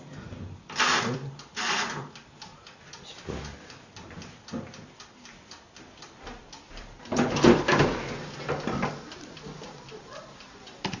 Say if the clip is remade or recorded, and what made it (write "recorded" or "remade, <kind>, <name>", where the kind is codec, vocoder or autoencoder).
remade, vocoder, BigVGAN v2